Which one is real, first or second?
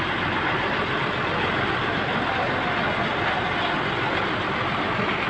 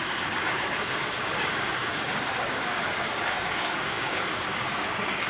first